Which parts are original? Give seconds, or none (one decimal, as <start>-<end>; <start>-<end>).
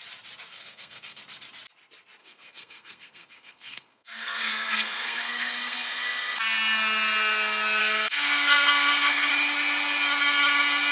0.0-0.5; 1.2-2.2; 6.4-7.8; 9.3-10.9